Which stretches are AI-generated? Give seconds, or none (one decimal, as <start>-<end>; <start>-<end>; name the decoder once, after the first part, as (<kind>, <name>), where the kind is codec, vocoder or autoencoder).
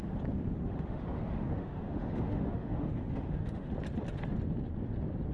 0.5-3.7 (autoencoder, DAC-VAE)